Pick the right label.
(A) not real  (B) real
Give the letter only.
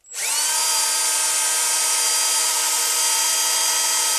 B